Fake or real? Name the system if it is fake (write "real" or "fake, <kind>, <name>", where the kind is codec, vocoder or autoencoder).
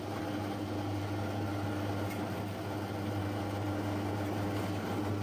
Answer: real